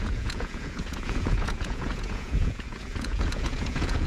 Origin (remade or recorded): remade